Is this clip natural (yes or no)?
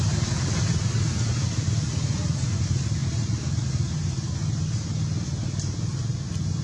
yes